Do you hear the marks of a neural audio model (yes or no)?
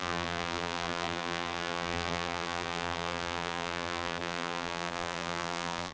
yes